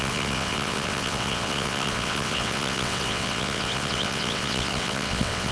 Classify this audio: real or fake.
fake